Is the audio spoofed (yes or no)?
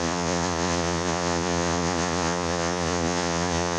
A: yes